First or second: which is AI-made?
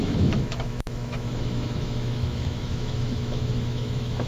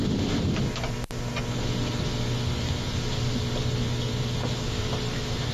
first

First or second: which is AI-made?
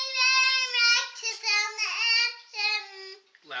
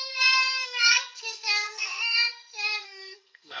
second